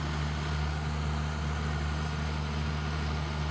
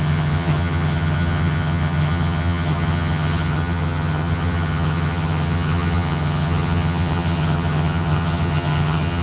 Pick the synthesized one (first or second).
second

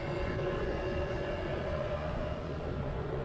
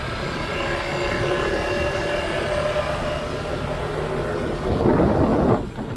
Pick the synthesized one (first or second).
first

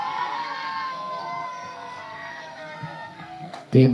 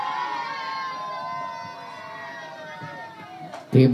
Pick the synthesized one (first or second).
first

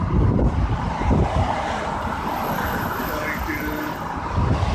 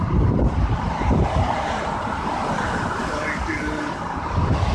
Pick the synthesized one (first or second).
second